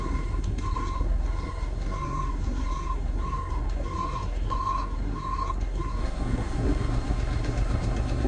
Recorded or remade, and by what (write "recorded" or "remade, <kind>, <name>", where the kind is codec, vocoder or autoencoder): remade, codec, SNAC